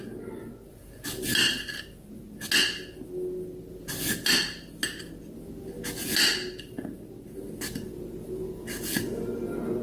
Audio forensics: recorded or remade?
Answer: recorded